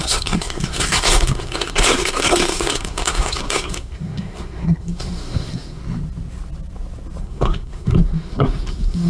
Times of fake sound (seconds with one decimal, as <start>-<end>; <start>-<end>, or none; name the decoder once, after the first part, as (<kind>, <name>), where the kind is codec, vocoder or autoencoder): 0.0-5.8 (codec, SNAC); 7.2-9.1